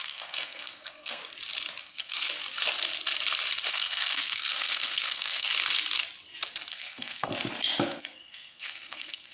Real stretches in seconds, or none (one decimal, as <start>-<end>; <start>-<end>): 1.2-1.8; 2.3-3.7; 5.5-6.7; 7.3-8.0

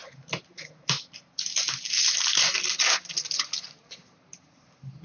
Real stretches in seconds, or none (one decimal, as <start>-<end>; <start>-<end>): 0.0-5.0

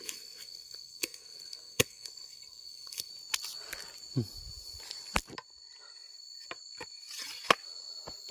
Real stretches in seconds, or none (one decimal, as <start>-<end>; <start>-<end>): 3.1-8.3

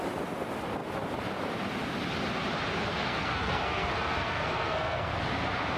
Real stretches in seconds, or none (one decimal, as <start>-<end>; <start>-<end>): 0.0-2.9; 5.2-5.8

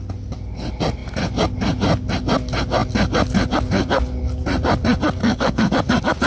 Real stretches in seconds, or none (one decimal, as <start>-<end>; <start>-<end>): 0.0-5.2; 5.7-6.3

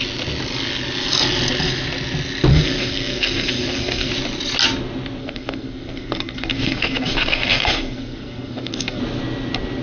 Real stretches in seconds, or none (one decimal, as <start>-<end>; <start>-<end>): 0.0-2.5; 4.1-5.2; 9.0-9.8

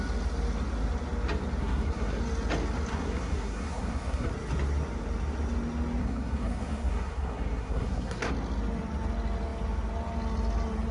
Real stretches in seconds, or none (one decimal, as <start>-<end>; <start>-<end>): 0.0-1.6; 2.2-2.9; 4.3-6.0; 8.3-10.9